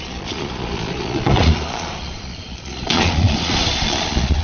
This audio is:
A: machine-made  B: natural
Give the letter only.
A